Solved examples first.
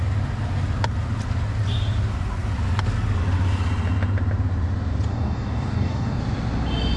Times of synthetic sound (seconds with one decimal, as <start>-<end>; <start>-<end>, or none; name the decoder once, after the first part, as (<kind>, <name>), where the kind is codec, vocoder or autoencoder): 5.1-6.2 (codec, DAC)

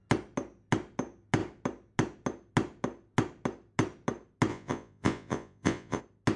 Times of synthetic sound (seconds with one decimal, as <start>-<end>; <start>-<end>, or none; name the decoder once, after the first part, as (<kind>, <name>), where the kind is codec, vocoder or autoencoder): 4.5-6.0 (vocoder, Vocos)

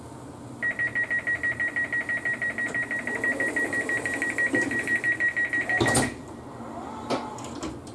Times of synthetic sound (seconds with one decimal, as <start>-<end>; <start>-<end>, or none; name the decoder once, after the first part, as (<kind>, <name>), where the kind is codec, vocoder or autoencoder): none

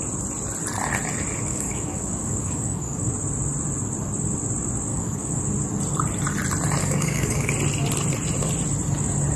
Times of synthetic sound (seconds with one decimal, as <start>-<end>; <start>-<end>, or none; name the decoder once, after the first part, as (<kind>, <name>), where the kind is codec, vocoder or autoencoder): 1.5-3.1 (codec, DAC); 4.9-5.4; 6.8-7.5

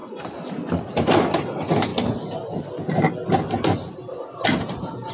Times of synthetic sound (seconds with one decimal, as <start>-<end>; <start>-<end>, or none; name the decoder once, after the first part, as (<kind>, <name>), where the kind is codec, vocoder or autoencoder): none

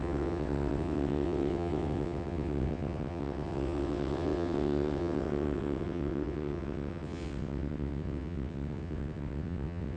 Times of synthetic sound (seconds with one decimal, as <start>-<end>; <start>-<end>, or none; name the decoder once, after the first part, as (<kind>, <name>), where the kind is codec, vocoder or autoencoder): 0.0-10.0 (vocoder, WaveNeXt)

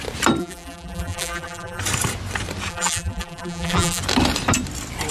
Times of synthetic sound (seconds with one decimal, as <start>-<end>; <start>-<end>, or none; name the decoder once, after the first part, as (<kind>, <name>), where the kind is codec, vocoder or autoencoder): 0.4-1.8 (vocoder, BigVGAN v2); 2.7-4.0

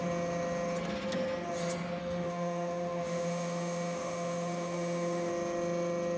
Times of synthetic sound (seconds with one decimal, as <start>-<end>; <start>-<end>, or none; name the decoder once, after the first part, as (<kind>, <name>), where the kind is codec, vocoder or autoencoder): 2.0-5.3 (autoencoder, DAC-VAE)